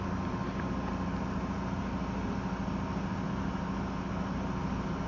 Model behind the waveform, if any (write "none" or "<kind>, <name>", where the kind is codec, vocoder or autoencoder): none